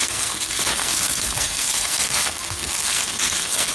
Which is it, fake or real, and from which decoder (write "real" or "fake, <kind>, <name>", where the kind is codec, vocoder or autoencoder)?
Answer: fake, codec, SNAC